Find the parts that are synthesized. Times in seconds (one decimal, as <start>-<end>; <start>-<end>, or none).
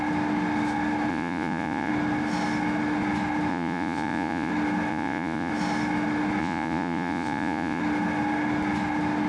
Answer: 1.1-1.9; 3.5-4.5; 4.9-5.5; 6.4-7.8